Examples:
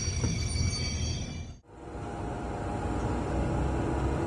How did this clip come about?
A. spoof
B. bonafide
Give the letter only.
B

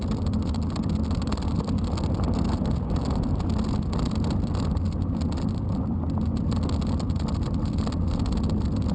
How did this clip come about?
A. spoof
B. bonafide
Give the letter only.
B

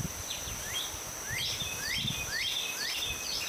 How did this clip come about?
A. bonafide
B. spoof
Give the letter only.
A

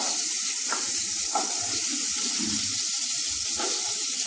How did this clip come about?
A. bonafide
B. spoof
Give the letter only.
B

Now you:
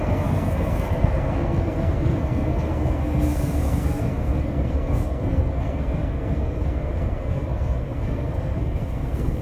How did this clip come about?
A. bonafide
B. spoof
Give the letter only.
B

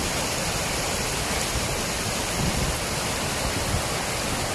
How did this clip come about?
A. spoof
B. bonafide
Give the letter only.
B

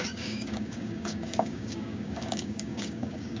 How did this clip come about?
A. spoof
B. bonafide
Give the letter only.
A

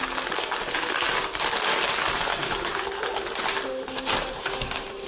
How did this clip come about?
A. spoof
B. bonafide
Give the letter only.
B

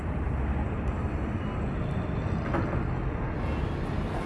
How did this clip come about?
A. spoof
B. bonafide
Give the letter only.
B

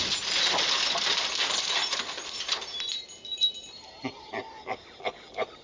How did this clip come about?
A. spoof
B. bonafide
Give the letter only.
B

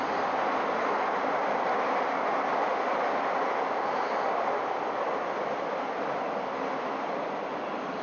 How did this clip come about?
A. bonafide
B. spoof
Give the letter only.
A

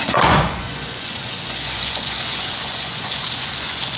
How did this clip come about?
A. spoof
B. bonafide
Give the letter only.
A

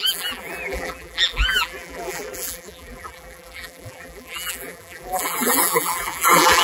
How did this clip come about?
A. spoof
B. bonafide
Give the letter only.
A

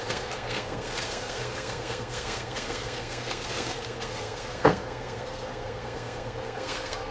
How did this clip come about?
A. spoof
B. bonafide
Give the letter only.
A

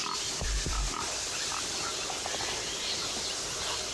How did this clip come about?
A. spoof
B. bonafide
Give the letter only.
B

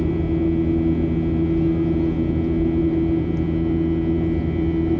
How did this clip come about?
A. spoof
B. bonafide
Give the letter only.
B